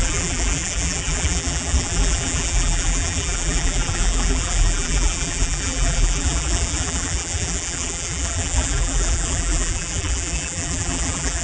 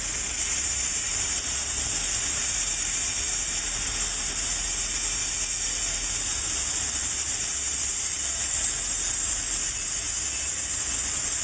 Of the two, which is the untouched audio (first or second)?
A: second